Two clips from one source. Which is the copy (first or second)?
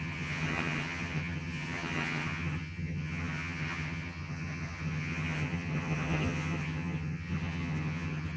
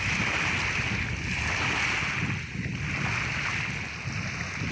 first